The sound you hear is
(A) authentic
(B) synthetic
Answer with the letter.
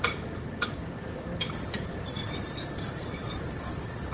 B